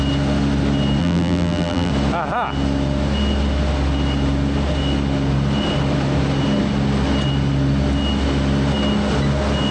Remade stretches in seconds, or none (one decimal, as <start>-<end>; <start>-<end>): 1.0-1.9